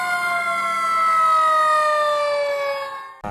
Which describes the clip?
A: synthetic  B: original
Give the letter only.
B